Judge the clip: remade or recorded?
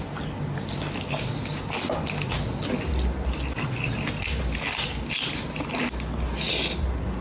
recorded